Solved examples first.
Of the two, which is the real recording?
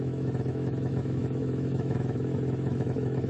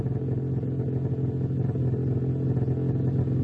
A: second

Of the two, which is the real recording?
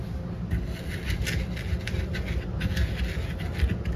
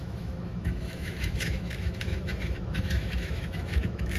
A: first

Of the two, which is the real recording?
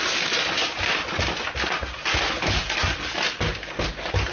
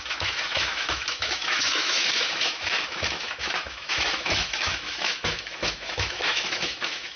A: first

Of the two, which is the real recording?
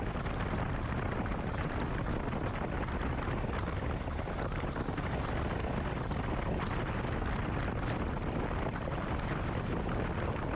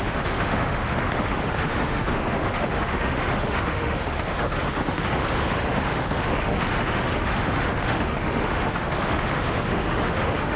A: first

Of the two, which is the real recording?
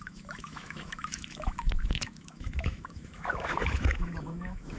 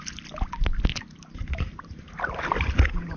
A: second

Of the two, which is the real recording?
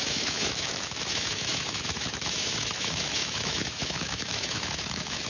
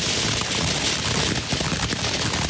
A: second